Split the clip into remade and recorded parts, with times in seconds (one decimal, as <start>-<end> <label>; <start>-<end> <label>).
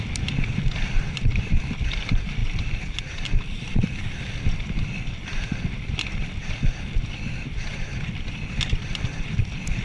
0.0-9.8 recorded